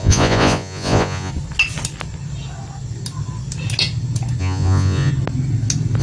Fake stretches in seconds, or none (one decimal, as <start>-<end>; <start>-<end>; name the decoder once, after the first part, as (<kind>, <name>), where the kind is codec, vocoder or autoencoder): 0.0-1.3 (vocoder, Vocos); 4.4-5.1